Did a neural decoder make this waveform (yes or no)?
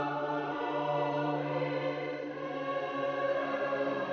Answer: yes